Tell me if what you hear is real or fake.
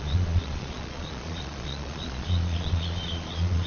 fake